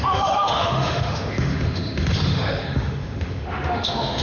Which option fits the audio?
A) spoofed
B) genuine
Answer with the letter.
A